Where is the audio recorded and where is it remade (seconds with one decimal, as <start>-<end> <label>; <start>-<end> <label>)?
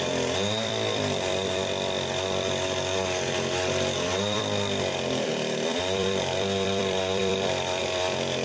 0.0-8.4 remade